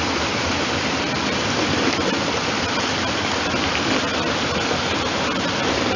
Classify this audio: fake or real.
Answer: real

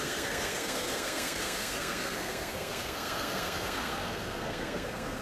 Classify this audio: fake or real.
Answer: fake